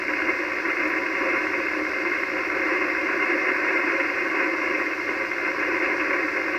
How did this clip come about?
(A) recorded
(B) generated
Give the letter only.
A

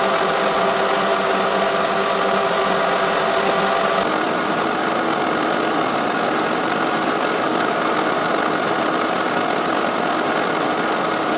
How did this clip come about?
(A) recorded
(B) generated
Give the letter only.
A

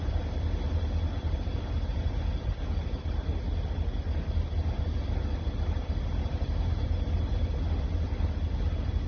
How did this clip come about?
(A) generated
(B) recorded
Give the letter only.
B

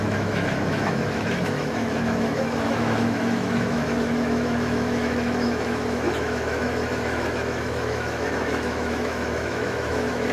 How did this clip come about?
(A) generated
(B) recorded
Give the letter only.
A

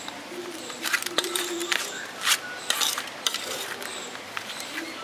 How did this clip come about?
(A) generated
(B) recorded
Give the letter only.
A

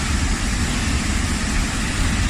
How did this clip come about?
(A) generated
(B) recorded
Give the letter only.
B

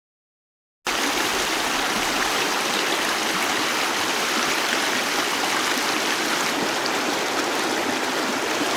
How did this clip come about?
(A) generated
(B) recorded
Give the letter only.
B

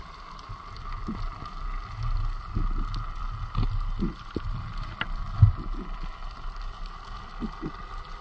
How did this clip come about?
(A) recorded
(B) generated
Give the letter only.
A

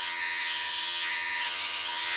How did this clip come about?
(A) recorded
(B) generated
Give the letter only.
B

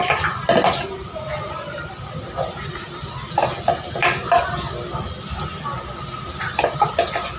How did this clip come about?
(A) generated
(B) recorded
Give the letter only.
B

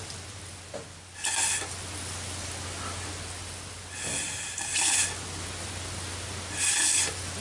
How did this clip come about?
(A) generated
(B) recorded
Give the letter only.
B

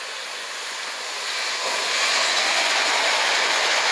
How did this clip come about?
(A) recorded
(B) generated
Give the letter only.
B